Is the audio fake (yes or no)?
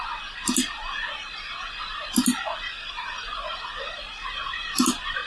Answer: no